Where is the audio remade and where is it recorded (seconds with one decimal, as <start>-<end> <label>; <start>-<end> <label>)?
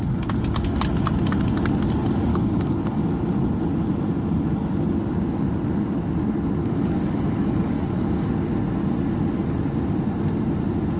0.0-2.3 recorded; 2.3-3.0 remade; 3.0-6.6 recorded; 6.6-8.3 remade; 8.3-11.0 recorded